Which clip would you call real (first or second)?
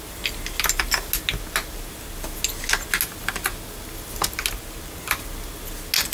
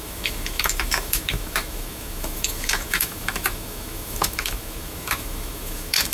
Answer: first